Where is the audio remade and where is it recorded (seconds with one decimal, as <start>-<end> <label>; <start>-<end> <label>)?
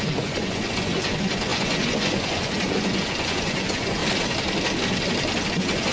0.0-4.0 remade; 4.0-5.5 recorded; 5.5-5.9 remade